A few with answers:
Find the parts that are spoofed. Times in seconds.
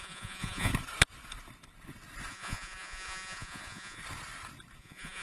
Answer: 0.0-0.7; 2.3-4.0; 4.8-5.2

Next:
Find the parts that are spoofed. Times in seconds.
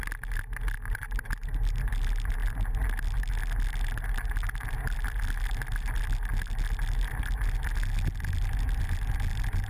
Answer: none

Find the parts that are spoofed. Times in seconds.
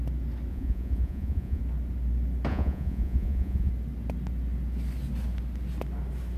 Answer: 0.5-1.6; 2.5-3.7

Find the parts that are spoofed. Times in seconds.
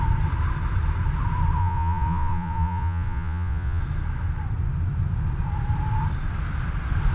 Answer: 1.6-3.8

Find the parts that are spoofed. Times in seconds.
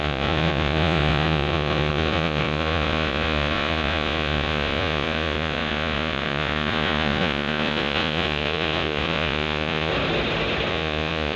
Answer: 0.0-9.9; 10.7-11.4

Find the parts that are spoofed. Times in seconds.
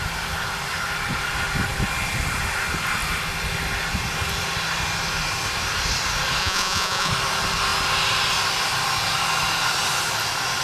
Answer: 6.4-7.1